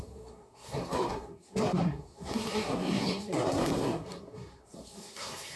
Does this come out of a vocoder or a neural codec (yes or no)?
yes